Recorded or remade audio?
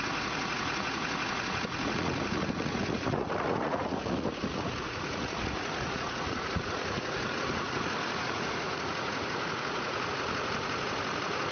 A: remade